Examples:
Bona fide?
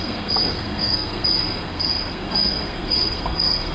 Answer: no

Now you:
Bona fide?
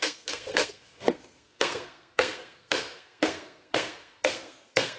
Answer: no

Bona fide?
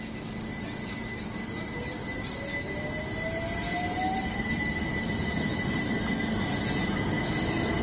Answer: yes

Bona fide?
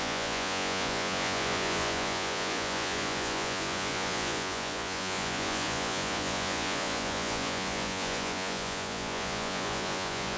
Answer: no